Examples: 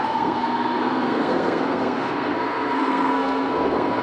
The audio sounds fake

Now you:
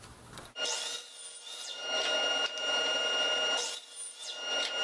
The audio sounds real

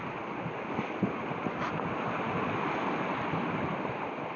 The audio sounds real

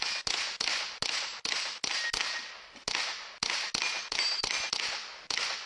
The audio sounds real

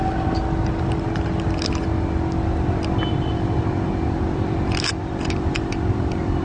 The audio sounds real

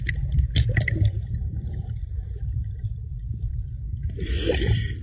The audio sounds fake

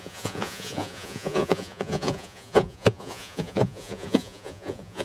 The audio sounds fake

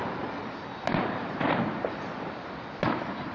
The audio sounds real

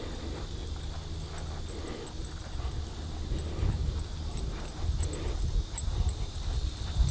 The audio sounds real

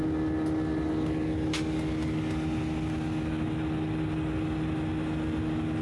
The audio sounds real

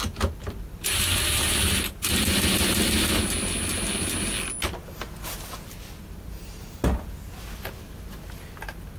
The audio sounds real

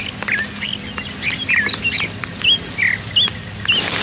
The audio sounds real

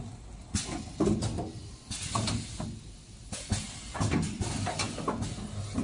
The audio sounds real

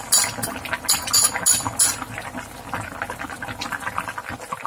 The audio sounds real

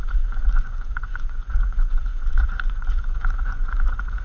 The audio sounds fake